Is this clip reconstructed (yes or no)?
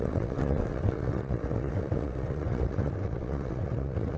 yes